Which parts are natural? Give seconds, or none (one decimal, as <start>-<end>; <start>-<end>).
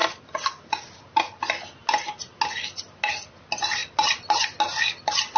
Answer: 0.0-5.4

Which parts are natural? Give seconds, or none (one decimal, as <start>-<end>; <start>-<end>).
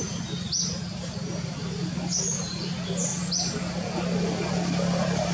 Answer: 0.0-5.3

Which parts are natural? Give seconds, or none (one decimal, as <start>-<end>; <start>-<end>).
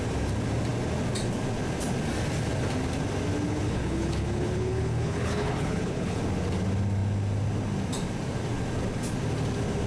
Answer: 0.0-3.5; 6.2-9.9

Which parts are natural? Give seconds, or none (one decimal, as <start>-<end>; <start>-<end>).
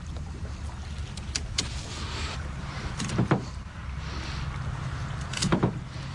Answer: 3.8-4.7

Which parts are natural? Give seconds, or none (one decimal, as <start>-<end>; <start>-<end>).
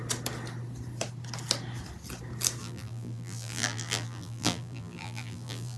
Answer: 0.0-2.6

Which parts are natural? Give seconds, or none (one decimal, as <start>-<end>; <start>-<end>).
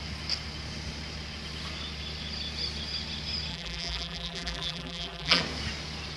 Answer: 0.0-3.5; 5.4-6.2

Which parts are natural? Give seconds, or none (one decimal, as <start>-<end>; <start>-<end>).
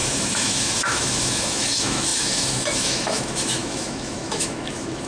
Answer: none